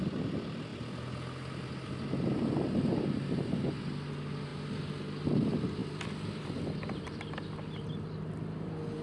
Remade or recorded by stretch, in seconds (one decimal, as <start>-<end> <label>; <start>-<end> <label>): 0.0-5.8 recorded; 5.8-6.6 remade; 6.6-9.0 recorded